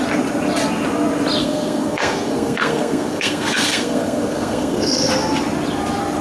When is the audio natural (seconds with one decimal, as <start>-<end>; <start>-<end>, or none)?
0.0-1.4; 5.1-6.2